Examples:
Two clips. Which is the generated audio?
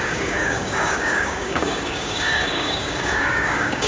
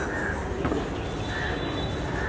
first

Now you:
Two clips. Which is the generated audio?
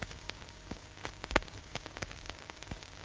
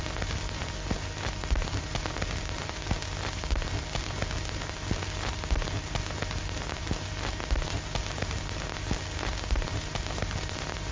first